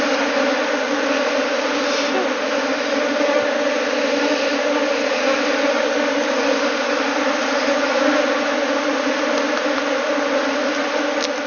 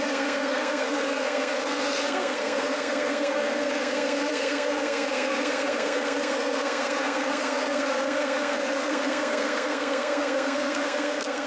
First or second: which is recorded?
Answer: first